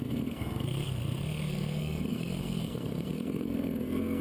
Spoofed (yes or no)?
yes